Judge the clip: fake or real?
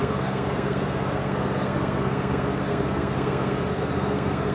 fake